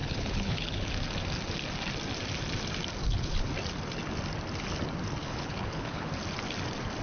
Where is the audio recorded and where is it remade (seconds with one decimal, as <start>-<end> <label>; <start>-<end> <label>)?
0.0-0.9 remade; 0.9-3.0 recorded; 3.0-3.5 remade; 3.5-5.2 recorded; 5.2-6.1 remade; 6.1-7.0 recorded